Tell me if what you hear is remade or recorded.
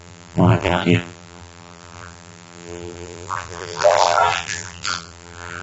remade